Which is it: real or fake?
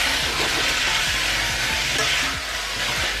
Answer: real